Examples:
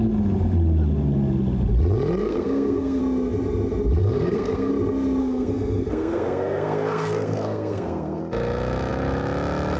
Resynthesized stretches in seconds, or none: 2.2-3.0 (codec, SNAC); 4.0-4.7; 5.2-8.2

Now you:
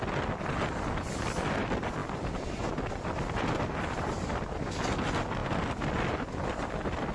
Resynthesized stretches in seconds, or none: none

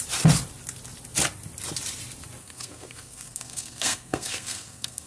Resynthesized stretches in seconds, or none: 2.4-5.1 (codec, SNAC)

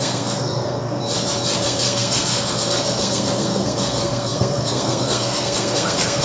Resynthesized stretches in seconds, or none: 0.0-1.0 (codec, SNAC); 1.6-6.2

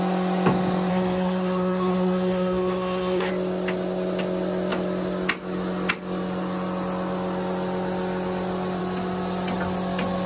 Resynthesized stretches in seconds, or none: 0.9-3.3 (codec, SNAC)

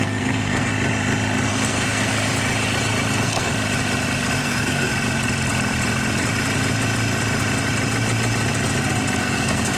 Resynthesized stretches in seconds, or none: 0.0-0.7 (codec, SNAC); 1.5-2.1; 3.1-3.5; 4.4-4.9; 9.2-9.8